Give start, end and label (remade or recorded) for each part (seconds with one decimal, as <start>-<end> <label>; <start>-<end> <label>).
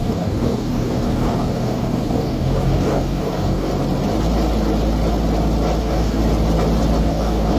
0.0-3.7 remade; 3.7-5.8 recorded; 5.8-6.2 remade; 6.2-7.0 recorded; 7.0-7.6 remade